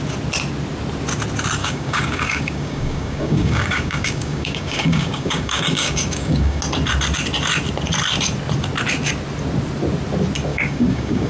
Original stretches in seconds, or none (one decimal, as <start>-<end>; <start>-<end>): 0.0-1.6; 6.6-10.5